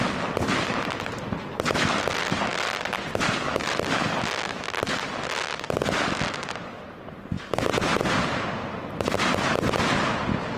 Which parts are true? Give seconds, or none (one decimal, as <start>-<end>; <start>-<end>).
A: 0.0-10.6